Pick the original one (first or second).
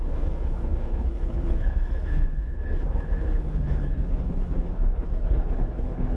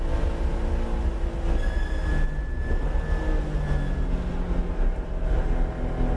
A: second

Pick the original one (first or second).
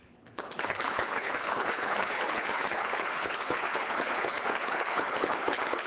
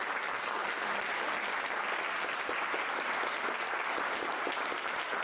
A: second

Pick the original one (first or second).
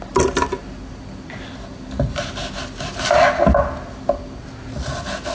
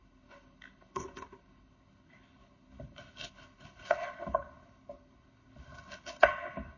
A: first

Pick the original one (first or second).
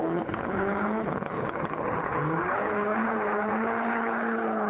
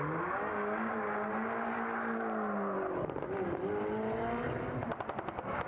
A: second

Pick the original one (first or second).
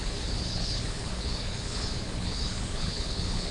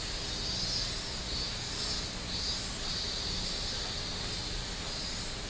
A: second